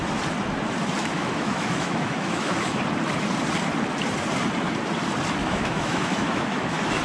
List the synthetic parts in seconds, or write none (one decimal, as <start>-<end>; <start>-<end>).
1.0-2.8; 5.4-7.0